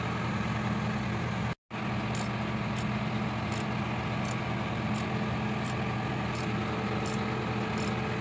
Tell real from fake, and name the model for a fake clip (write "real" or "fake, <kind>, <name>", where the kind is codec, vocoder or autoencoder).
real